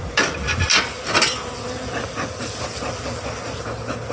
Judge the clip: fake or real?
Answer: real